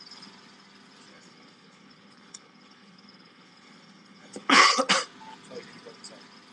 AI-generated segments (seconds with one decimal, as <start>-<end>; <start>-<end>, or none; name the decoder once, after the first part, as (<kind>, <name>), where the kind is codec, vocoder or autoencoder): 1.1-4.9 (codec, HILCodec)